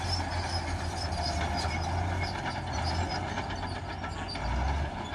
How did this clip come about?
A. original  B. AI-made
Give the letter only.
A